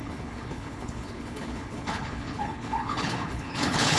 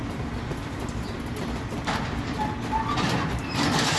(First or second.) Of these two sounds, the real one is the second